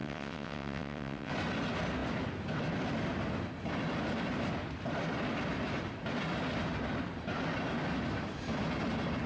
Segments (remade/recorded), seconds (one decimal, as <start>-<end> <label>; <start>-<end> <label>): 0.0-1.3 remade; 1.3-9.3 recorded